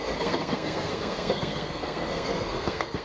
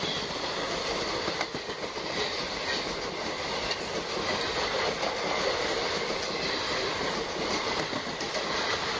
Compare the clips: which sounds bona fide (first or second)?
second